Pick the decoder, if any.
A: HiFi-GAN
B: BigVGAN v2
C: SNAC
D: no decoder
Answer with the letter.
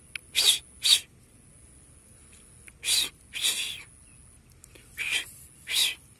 D